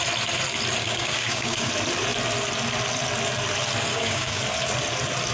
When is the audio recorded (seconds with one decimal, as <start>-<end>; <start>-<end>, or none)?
0.0-0.8; 1.7-3.9; 4.4-5.3